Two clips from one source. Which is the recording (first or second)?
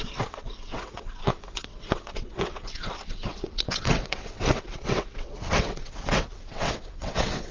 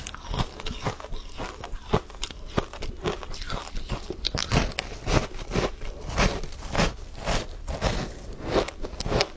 second